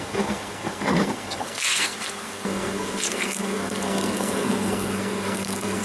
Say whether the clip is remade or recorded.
remade